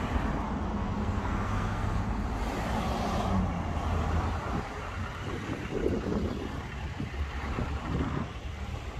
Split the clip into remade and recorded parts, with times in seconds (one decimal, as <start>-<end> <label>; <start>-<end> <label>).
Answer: 0.0-0.7 recorded; 0.7-2.0 remade; 2.0-9.0 recorded